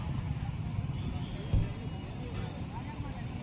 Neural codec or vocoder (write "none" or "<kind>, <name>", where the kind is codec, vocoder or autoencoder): none